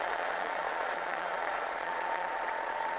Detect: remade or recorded remade